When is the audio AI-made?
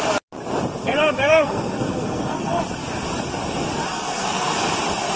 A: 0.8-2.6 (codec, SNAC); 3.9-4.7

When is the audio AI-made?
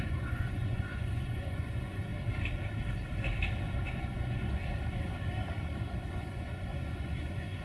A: 0.0-2.1 (vocoder, Vocos); 3.7-4.6; 6.1-7.6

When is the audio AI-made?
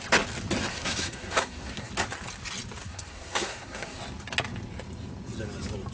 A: 0.7-1.9 (codec, SNAC); 2.8-4.0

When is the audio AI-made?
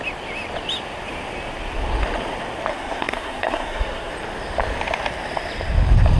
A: 2.7-4.1 (codec, SNAC)